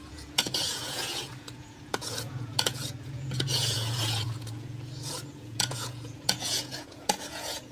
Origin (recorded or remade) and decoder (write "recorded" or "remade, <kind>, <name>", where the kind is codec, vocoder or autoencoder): remade, vocoder, Vocos